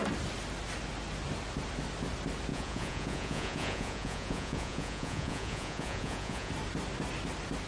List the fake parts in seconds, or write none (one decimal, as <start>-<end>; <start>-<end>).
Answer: 2.5-6.5

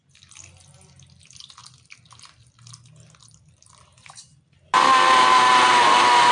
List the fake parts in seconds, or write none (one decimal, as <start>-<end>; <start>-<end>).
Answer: none

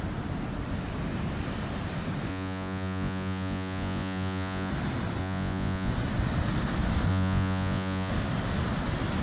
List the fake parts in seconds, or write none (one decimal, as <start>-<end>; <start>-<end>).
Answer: 2.3-4.7; 5.2-5.9; 7.1-8.1

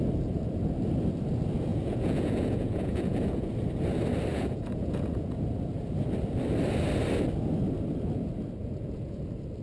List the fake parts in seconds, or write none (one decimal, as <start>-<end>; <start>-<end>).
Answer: 1.7-3.5; 4.3-5.4; 8.6-9.2

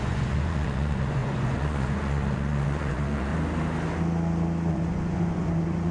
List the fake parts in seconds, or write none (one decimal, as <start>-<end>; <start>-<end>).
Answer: 0.0-3.3; 4.7-5.9

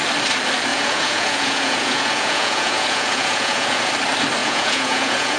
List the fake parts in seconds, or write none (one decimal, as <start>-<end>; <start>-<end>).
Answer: 0.7-3.9; 4.4-5.4